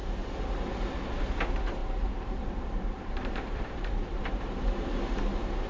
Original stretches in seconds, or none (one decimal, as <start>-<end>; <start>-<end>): 0.0-1.8; 4.6-5.7